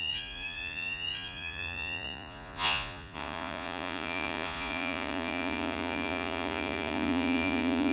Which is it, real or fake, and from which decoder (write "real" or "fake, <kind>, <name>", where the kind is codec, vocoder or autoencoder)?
fake, vocoder, Vocos